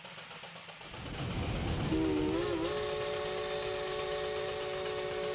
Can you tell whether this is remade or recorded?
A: recorded